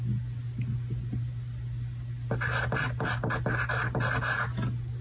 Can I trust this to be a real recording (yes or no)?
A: yes